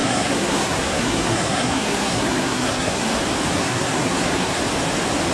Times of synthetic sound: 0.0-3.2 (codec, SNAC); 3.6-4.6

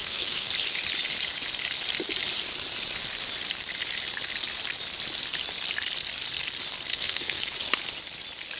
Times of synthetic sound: 0.0-0.5 (codec, SNAC); 6.9-7.4

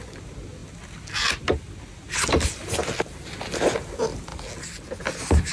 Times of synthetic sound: none

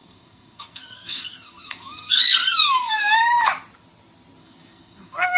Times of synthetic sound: 0.0-3.2 (codec, SNAC); 4.4-5.4

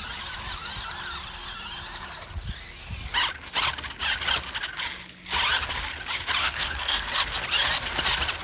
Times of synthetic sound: 6.4-7.1 (codec, SNAC)

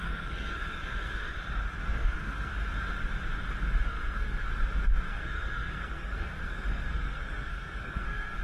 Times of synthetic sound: 0.0-1.3 (codec, SNAC); 1.8-2.5; 3.8-4.5; 5.1-8.4

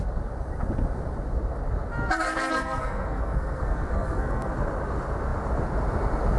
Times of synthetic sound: 2.0-4.5 (codec, SNAC)